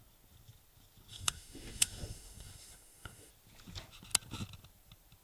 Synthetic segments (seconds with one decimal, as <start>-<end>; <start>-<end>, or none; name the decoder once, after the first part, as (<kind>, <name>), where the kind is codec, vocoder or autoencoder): 1.1-3.3 (autoencoder, DAC-VAE)